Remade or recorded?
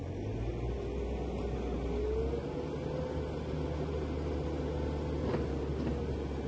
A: recorded